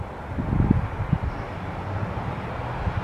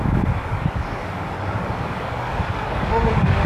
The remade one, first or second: second